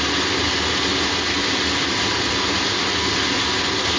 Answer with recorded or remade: recorded